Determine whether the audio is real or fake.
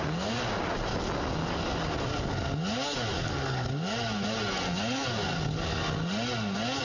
real